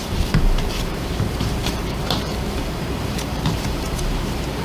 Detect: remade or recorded remade